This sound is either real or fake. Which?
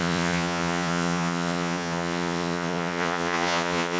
fake